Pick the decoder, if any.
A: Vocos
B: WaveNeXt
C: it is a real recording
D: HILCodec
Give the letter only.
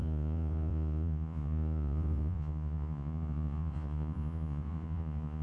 A